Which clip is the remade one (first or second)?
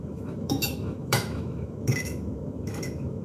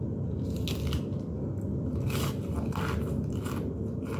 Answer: first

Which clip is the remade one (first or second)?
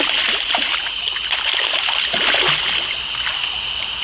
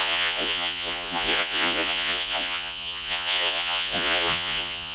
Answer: second